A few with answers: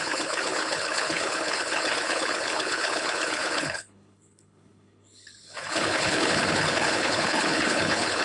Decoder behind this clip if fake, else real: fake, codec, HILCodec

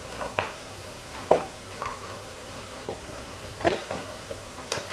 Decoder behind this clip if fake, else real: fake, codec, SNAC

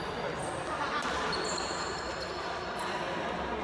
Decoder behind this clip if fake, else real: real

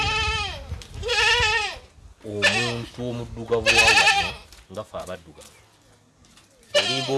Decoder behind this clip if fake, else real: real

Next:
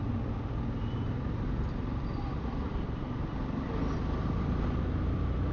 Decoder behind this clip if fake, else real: real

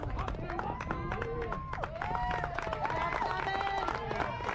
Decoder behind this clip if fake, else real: real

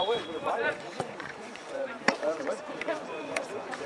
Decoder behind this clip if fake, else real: fake, vocoder, Vocos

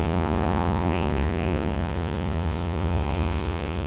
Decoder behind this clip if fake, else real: fake, vocoder, Vocos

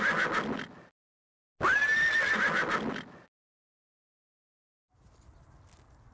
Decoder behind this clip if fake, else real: real